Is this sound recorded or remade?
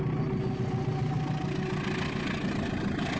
recorded